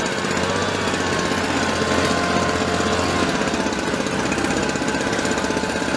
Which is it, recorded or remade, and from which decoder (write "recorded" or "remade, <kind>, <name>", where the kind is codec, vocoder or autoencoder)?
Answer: recorded